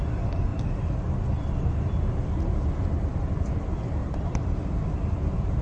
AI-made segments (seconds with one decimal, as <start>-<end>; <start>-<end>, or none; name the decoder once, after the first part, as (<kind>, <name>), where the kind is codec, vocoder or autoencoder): 4.0-4.7 (vocoder, BigVGAN v2)